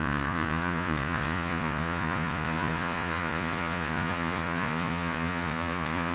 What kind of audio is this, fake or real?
fake